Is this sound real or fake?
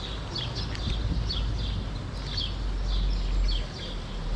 real